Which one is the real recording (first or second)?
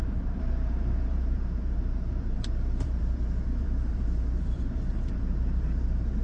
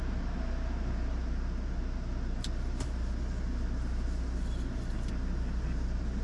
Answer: second